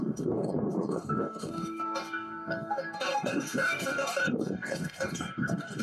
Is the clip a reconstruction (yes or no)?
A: yes